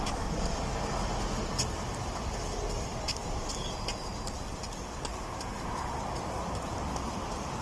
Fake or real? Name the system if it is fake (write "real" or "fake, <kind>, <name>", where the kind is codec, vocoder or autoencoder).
real